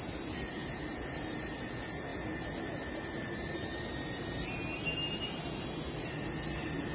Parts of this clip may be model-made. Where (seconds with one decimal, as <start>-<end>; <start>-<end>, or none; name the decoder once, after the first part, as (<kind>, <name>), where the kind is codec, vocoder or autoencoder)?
none